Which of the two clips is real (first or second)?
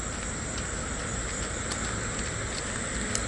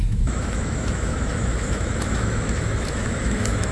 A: first